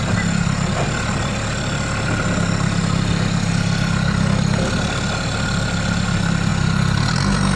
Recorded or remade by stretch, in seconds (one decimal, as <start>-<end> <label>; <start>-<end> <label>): 0.0-7.6 recorded